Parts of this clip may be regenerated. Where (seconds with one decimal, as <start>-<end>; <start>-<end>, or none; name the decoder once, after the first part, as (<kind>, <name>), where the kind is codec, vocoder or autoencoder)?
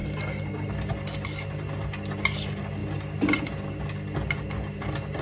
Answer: 0.0-0.7 (codec, SNAC)